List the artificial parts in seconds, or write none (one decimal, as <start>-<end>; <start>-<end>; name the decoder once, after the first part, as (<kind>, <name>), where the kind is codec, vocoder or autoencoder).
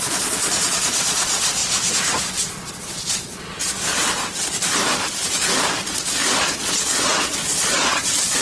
0.0-1.6 (vocoder, Vocos); 2.5-3.6; 6.4-8.4